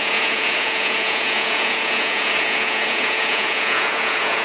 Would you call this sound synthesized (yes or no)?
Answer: yes